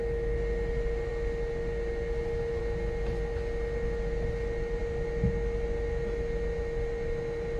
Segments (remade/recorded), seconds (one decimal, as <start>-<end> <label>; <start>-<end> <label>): 0.0-7.6 recorded

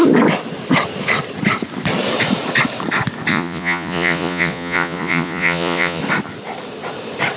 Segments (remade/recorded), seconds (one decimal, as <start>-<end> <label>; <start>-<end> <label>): 0.0-3.3 recorded; 3.3-6.0 remade; 6.0-7.4 recorded

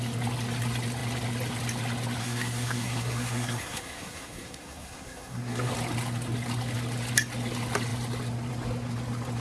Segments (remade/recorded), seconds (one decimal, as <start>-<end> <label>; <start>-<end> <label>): 0.0-2.2 recorded; 2.2-5.7 remade; 5.7-9.4 recorded

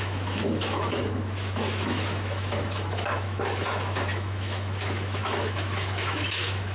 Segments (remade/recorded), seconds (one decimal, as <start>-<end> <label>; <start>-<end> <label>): 0.0-6.7 remade

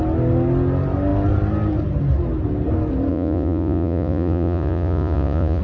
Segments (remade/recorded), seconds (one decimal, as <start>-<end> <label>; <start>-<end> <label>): 0.0-3.1 recorded; 3.1-5.6 remade

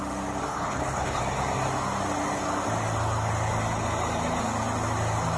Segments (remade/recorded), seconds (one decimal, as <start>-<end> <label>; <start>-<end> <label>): 0.0-0.5 recorded; 0.5-1.2 remade; 1.2-5.4 recorded

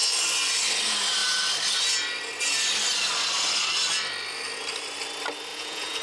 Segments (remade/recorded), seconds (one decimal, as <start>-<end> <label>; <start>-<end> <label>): 0.0-5.5 recorded; 5.5-6.0 remade